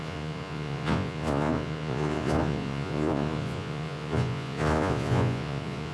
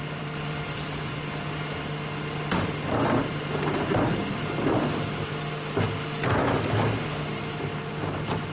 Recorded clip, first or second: second